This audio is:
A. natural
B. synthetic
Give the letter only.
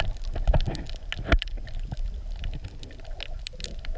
A